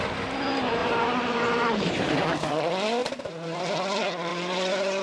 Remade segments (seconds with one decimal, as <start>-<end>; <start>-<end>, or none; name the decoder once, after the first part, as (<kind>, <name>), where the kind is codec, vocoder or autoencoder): 0.8-2.3 (vocoder, BigVGAN v2); 3.0-3.6; 4.3-5.0